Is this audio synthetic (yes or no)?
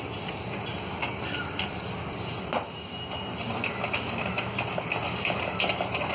no